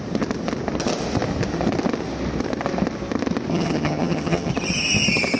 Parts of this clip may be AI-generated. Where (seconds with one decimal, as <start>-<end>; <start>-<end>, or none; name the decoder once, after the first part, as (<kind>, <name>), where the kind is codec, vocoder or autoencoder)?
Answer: 3.5-4.5 (vocoder, HiFi-GAN)